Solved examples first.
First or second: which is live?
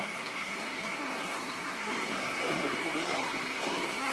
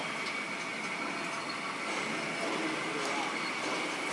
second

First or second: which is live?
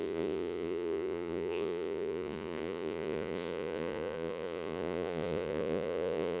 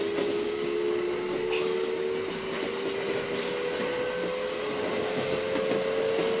second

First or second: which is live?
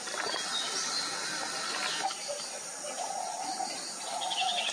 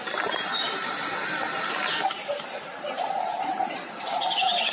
first